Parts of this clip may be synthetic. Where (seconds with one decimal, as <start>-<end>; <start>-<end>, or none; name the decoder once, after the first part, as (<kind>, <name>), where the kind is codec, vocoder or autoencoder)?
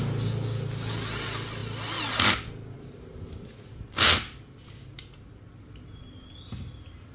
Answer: none